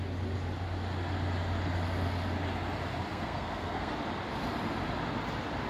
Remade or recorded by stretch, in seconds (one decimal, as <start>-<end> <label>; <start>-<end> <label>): 0.0-3.1 recorded; 3.1-3.9 remade; 3.9-5.7 recorded

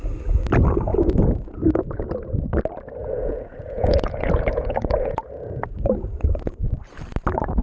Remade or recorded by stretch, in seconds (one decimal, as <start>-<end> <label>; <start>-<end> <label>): 0.0-0.9 recorded; 0.9-2.3 remade; 2.3-3.0 recorded; 3.0-6.7 remade; 6.7-7.6 recorded